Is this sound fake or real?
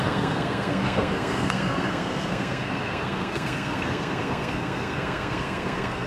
fake